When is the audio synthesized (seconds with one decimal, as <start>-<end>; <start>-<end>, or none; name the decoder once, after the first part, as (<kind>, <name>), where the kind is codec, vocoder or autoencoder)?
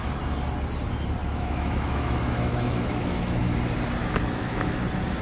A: 1.2-3.4 (autoencoder, DAC-VAE); 4.0-4.8